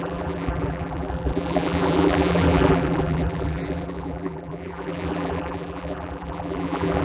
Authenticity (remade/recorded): remade